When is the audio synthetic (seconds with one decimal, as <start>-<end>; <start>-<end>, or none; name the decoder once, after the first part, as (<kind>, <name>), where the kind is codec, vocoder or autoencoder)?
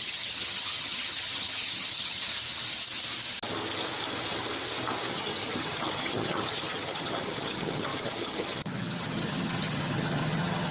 0.0-2.3 (vocoder, HiFi-GAN); 5.1-10.7